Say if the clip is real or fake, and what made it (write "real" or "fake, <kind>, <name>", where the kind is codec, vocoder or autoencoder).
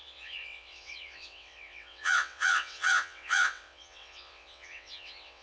fake, vocoder, WaveNeXt